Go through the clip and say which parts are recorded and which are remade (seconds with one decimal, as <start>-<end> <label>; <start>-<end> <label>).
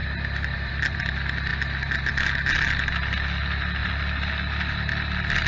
0.0-1.0 remade; 1.0-3.8 recorded; 3.8-4.3 remade; 4.3-5.5 recorded